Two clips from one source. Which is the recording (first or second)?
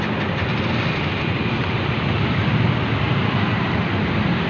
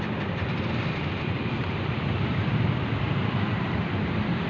first